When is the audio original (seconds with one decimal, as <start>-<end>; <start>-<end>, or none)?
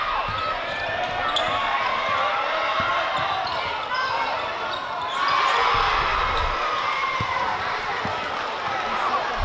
0.0-2.3; 3.1-7.0; 7.9-9.4